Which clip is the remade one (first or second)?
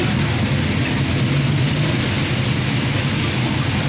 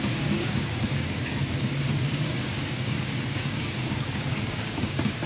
second